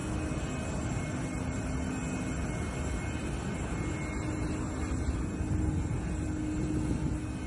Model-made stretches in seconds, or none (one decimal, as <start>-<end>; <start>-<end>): none